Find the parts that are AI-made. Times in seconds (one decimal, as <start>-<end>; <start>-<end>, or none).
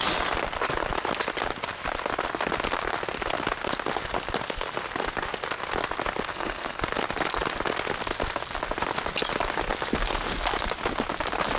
6.3-6.8